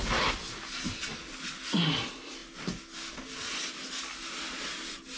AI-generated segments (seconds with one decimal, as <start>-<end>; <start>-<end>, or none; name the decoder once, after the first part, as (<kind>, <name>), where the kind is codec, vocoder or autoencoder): none